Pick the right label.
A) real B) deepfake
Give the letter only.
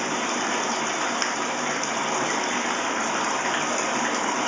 A